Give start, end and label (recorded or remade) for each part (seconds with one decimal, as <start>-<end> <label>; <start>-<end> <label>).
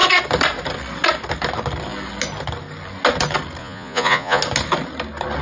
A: 0.0-3.6 recorded; 3.6-4.4 remade; 4.4-5.4 recorded